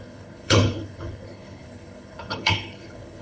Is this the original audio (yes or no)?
no